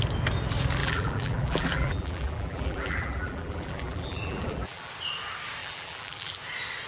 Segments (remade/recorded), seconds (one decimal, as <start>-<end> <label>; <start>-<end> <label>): 0.0-0.8 recorded; 0.8-4.9 remade; 4.9-5.6 recorded; 5.6-6.4 remade; 6.4-6.9 recorded